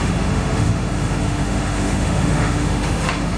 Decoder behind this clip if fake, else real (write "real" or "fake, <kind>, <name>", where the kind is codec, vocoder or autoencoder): fake, autoencoder, DAC-VAE